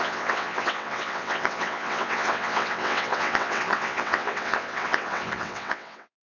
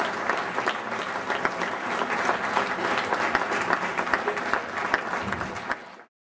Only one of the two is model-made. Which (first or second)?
first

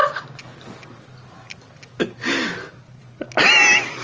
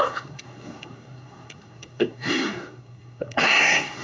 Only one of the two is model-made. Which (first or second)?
second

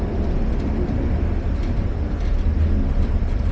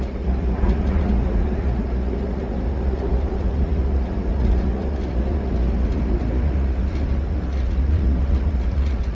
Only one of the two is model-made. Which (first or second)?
second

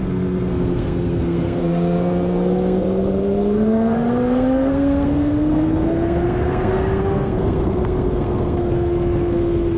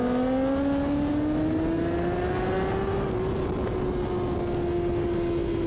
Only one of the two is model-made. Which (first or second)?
first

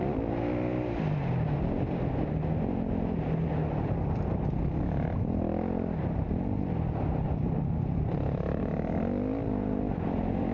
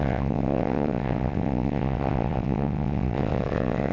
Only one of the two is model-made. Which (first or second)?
second